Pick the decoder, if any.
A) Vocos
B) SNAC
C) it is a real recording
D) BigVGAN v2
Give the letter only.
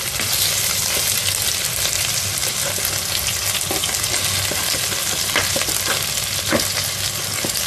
C